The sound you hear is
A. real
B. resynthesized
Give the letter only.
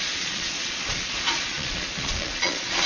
B